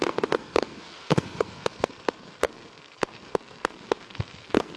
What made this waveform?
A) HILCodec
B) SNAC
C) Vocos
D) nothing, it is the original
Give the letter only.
B